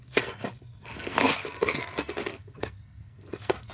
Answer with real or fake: fake